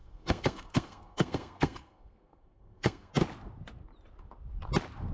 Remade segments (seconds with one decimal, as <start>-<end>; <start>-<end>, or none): 0.0-3.1